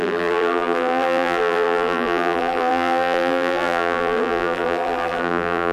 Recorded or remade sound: remade